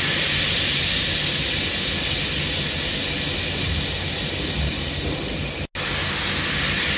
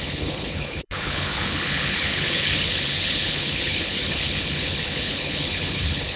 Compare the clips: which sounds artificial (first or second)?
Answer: second